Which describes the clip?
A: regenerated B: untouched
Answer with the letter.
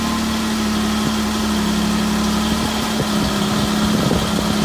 B